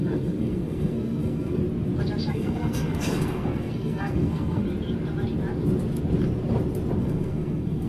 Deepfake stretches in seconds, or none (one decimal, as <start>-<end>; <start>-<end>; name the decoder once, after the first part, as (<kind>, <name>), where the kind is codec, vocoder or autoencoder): 0.0-1.6 (codec, SNAC); 2.3-4.6; 7.0-7.9